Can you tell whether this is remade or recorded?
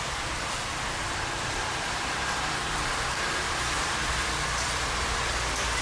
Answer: remade